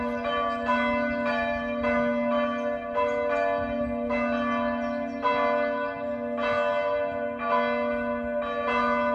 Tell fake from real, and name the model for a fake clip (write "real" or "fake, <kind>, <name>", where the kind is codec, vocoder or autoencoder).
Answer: real